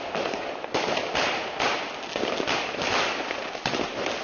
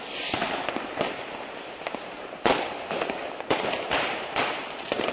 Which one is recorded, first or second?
first